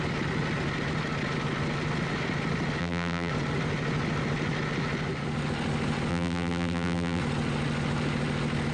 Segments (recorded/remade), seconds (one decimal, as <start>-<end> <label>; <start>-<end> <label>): 0.0-2.8 recorded; 2.8-3.3 remade; 3.3-6.1 recorded; 6.1-7.2 remade; 7.2-8.7 recorded